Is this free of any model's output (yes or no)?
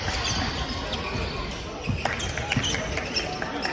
yes